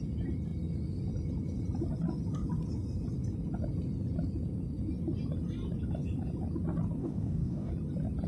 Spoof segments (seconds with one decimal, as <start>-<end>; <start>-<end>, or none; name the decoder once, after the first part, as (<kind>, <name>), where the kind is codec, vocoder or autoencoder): 7.0-7.7 (codec, DAC)